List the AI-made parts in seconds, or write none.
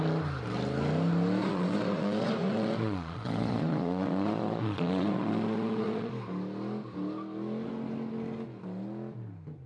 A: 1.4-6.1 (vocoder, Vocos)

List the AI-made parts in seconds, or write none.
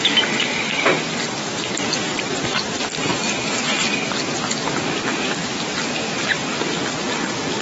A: 2.9-3.6 (codec, DAC)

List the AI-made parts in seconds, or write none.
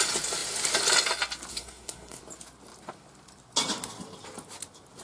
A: 1.5-2.2 (codec, SNAC)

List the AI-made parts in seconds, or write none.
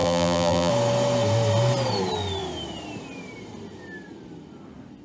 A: 0.0-0.7 (vocoder, BigVGAN v2)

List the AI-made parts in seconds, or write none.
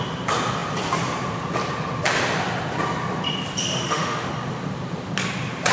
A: 3.6-4.3 (autoencoder, DAC-VAE)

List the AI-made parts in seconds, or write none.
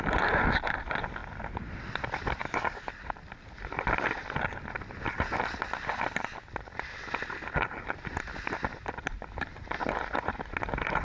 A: 2.4-2.9 (codec, DAC)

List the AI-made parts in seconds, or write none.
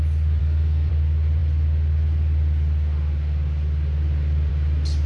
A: 0.4-0.9 (codec, SNAC)